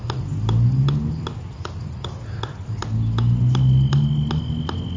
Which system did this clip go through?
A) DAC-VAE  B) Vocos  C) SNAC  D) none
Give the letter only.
D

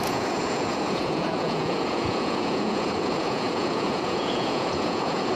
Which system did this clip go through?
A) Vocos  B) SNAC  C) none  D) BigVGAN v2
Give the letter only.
A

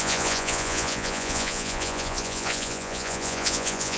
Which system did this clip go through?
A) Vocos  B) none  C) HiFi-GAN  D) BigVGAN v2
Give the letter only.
A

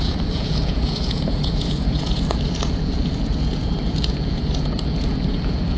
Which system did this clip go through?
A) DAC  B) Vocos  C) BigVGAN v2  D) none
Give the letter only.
B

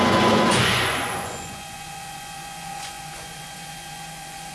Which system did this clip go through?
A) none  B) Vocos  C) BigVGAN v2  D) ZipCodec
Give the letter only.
B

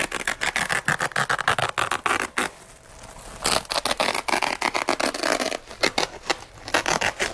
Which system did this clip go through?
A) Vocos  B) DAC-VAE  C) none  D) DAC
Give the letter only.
C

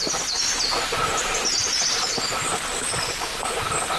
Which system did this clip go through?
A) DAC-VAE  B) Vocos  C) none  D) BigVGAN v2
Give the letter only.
C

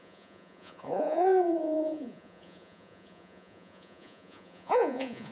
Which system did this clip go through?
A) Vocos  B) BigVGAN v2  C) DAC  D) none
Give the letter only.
A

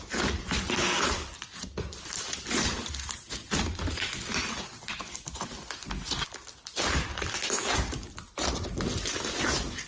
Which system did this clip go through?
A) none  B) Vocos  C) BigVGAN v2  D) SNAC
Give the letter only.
A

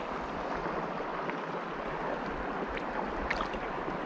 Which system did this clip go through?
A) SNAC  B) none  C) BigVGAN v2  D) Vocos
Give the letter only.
B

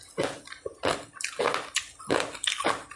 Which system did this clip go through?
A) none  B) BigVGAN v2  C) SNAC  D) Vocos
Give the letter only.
A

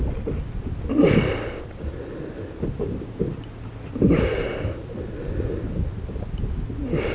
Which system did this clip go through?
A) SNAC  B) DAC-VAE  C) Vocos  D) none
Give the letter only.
D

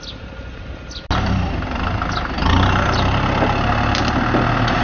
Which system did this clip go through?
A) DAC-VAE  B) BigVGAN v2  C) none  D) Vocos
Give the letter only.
C